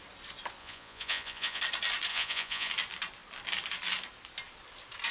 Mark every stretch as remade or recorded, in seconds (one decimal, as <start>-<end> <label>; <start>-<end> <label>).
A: 0.0-0.6 recorded; 0.6-1.6 remade; 1.6-2.1 recorded; 2.1-2.7 remade; 2.7-5.1 recorded